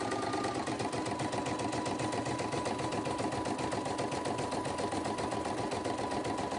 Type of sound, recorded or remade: recorded